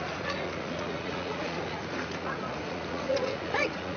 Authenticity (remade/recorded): remade